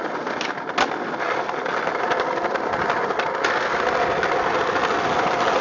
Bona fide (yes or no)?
yes